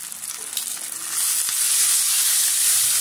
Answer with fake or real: real